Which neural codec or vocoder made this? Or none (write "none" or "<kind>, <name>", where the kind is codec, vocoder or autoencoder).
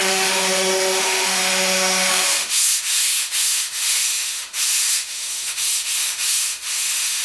autoencoder, DAC-VAE